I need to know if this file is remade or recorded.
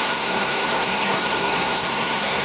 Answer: remade